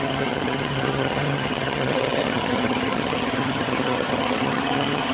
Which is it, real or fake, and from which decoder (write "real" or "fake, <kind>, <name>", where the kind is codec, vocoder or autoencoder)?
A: fake, vocoder, HiFi-GAN